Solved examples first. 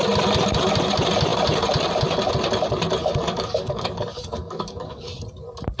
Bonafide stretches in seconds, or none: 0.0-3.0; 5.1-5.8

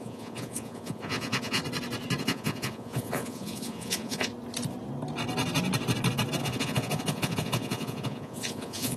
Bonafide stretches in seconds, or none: 1.6-2.2; 4.3-6.4

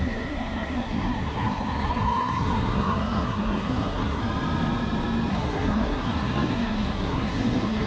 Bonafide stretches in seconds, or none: 4.2-5.3

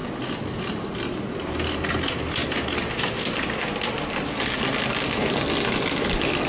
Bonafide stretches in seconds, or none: 0.0-6.5

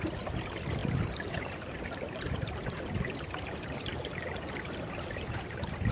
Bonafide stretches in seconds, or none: 0.0-0.8; 2.8-3.5; 4.5-5.9

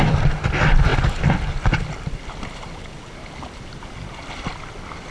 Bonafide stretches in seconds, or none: 0.0-5.1